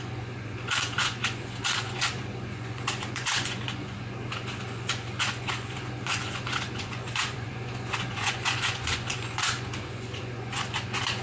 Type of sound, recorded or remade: remade